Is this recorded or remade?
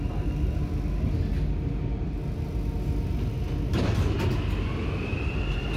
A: recorded